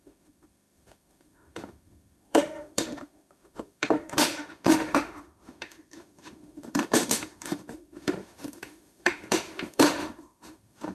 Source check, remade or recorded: remade